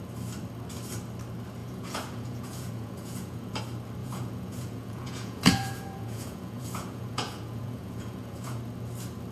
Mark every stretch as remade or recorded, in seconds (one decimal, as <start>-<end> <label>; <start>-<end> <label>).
0.0-1.6 recorded; 1.6-3.6 remade; 3.6-4.0 recorded; 4.0-8.6 remade; 8.6-9.3 recorded

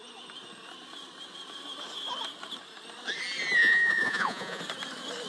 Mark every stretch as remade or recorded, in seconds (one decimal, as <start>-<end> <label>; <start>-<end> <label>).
0.0-3.6 recorded; 3.6-4.6 remade; 4.6-5.3 recorded

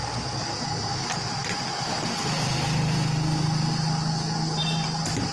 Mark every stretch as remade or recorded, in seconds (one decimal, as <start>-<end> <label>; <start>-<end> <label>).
0.0-5.3 recorded

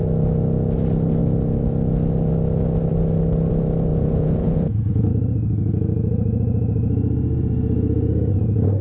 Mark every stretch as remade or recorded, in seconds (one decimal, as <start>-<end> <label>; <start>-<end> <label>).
0.0-3.9 recorded; 3.9-5.1 remade; 5.1-8.8 recorded

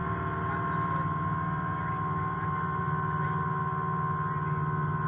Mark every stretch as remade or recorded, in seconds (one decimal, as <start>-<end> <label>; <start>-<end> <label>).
0.0-5.1 recorded

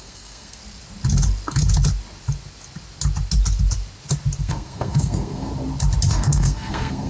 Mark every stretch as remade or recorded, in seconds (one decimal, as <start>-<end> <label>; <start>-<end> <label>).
0.0-0.6 remade; 0.6-4.4 recorded; 4.4-5.5 remade; 5.5-6.1 recorded; 6.1-7.1 remade

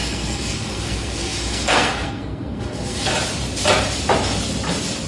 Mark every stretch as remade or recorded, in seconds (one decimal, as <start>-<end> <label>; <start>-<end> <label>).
0.0-3.1 remade; 3.1-5.1 recorded